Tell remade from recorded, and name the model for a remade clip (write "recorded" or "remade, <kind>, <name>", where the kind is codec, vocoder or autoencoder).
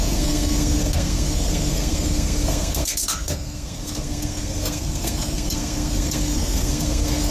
remade, codec, SNAC